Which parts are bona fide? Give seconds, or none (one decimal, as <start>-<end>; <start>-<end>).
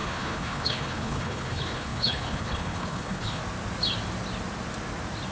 3.4-5.3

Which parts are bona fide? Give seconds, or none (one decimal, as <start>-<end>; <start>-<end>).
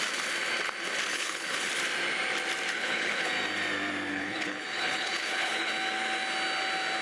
0.0-1.1; 1.7-2.7; 3.3-4.1; 5.7-7.0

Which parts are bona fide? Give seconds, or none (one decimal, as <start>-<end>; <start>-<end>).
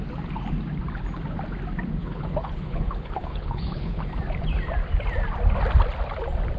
0.0-2.0; 4.1-6.6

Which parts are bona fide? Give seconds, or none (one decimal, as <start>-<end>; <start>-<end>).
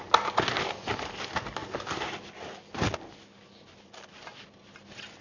0.0-5.2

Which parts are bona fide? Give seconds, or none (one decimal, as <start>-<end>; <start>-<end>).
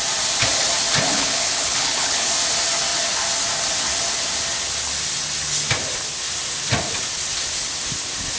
0.0-1.1; 2.3-8.4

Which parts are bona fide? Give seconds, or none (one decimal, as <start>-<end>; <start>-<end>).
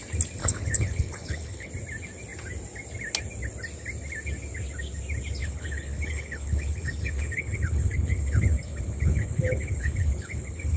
0.0-0.4; 1.7-5.4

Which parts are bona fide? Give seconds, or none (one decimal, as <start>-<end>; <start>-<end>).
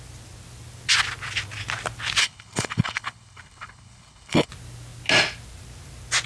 0.0-2.2; 4.5-6.3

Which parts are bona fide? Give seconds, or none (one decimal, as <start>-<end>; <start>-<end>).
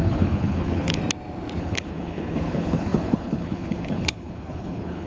1.0-1.6